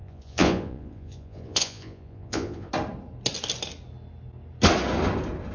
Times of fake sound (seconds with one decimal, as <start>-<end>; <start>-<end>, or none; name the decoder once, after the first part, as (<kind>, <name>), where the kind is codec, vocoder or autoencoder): 0.0-2.7 (vocoder, Vocos)